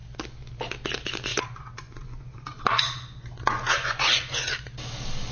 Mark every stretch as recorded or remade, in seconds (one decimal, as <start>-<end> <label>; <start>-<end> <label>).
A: 0.0-1.3 recorded; 1.3-4.5 remade; 4.5-5.3 recorded